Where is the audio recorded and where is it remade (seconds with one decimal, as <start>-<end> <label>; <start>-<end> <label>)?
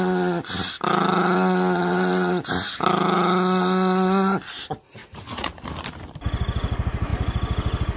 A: 0.0-5.0 recorded; 5.0-5.7 remade; 5.7-8.0 recorded